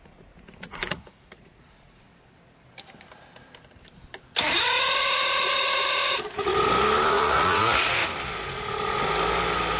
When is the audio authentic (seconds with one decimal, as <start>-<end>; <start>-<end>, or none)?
2.1-4.8; 6.5-7.1; 8.0-9.8